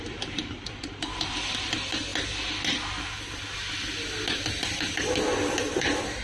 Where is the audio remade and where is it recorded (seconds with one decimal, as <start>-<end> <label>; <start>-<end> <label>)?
0.0-2.1 remade; 2.1-5.6 recorded; 5.6-6.2 remade